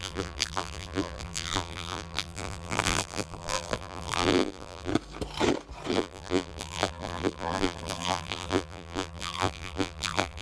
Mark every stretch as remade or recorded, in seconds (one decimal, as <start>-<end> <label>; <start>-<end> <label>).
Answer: 0.0-4.9 remade; 4.9-5.9 recorded; 5.9-10.4 remade